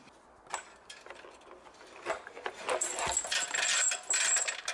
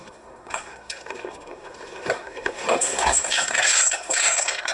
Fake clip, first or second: second